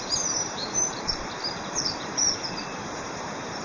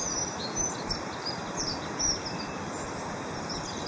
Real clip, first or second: second